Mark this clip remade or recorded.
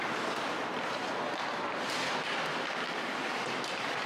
recorded